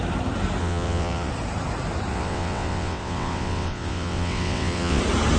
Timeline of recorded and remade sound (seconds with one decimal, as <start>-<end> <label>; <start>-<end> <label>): 0.0-0.6 recorded; 0.6-1.3 remade; 1.3-2.1 recorded; 2.1-5.0 remade; 5.0-5.4 recorded

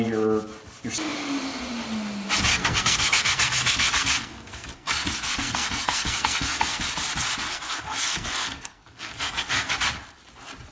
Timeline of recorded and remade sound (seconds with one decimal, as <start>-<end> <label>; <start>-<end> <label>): 0.0-2.5 recorded; 2.5-6.9 remade; 6.9-7.5 recorded; 7.5-9.7 remade; 9.7-10.7 recorded

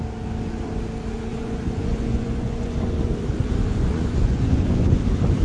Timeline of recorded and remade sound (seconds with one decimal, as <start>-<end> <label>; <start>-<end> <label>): 0.0-1.3 recorded; 1.3-3.1 remade; 3.1-3.6 recorded; 3.6-5.0 remade; 5.0-5.4 recorded

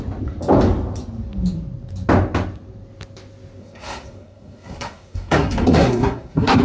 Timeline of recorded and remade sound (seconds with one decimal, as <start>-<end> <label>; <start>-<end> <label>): 0.0-3.6 recorded; 3.6-6.6 remade

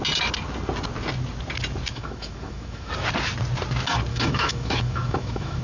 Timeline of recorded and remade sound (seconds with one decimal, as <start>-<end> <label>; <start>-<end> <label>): 0.0-1.9 recorded; 1.9-2.9 remade; 2.9-4.1 recorded; 4.1-5.6 remade

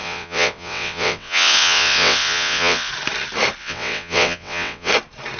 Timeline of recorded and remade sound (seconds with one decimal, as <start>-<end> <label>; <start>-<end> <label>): 0.0-2.9 remade; 2.9-3.6 recorded; 3.6-4.9 remade; 4.9-5.4 recorded